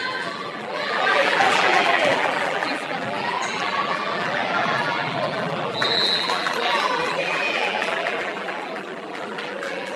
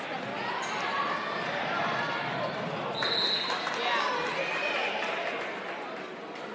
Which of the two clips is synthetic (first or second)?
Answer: first